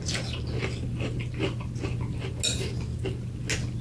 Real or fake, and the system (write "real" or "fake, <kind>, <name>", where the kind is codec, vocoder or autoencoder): real